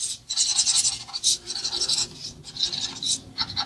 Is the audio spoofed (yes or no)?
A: no